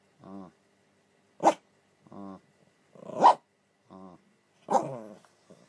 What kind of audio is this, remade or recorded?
recorded